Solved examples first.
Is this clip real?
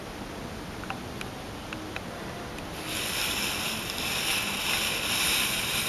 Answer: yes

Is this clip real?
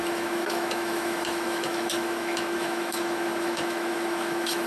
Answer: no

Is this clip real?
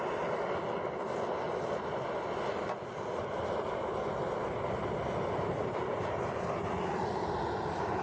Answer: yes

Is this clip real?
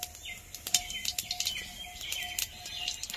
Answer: yes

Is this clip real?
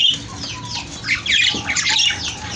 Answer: yes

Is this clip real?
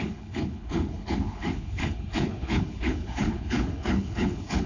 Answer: no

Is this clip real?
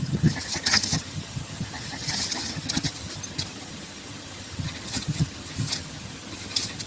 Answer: no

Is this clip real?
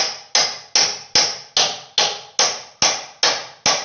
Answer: yes